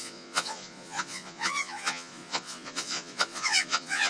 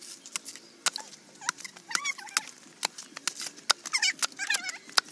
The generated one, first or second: first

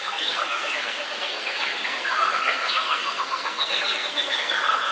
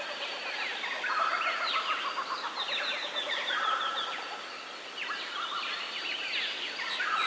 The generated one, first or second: first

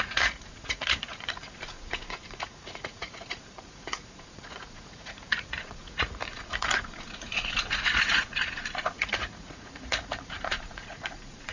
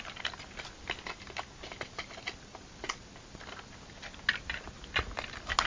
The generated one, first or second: first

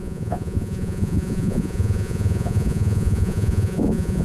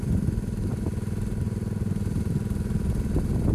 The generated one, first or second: first